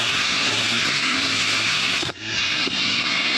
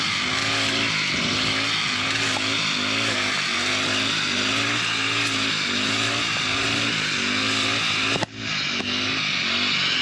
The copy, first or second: first